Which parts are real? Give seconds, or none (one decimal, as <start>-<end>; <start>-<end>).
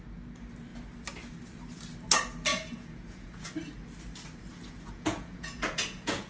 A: 0.0-2.5; 3.5-4.5